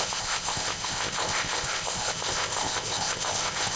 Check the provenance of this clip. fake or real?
fake